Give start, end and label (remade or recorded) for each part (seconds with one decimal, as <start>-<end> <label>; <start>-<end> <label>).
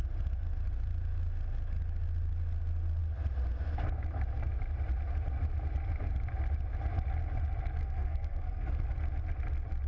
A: 0.0-7.8 recorded; 7.8-8.8 remade; 8.8-9.9 recorded